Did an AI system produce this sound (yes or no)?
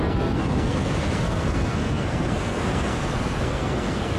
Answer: yes